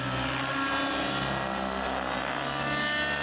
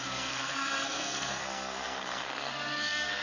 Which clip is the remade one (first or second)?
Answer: second